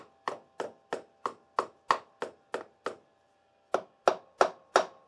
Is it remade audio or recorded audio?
recorded